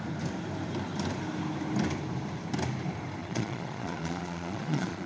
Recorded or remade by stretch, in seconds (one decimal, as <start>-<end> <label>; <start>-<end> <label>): 0.0-3.2 recorded; 3.2-5.1 remade